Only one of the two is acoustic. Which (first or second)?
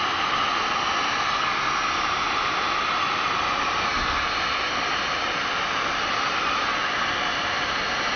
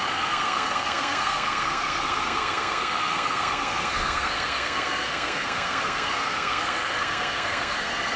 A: first